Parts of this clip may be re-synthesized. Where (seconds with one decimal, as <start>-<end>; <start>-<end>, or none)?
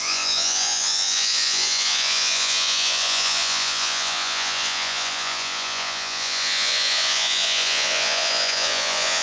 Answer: 0.0-9.2